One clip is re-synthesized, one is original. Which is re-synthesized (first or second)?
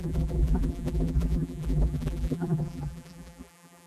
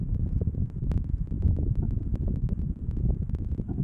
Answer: first